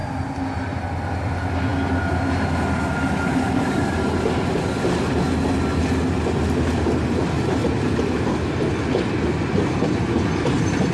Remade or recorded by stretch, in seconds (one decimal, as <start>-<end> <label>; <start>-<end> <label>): 0.0-10.9 recorded